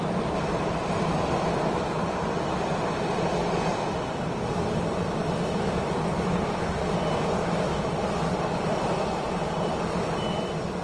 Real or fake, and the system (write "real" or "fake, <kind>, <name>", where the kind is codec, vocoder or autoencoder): fake, vocoder, BigVGAN v2